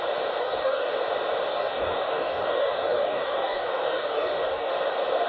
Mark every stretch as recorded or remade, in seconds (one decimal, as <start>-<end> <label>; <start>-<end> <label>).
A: 0.0-0.4 recorded; 0.4-0.9 remade; 0.9-1.5 recorded; 1.5-4.7 remade; 4.7-5.3 recorded